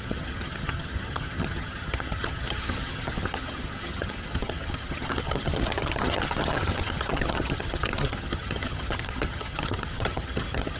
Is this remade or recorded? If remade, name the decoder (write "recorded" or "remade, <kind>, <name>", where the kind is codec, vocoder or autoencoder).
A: remade, vocoder, HiFi-GAN